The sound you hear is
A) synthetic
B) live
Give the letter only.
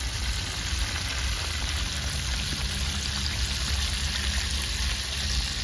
B